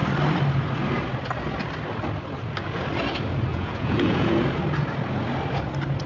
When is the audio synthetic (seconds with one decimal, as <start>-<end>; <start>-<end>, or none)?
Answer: 3.5-4.4